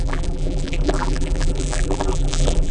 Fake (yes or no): yes